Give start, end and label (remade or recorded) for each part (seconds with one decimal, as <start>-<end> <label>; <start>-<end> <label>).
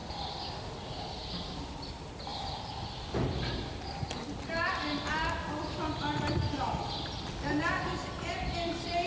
0.0-9.1 recorded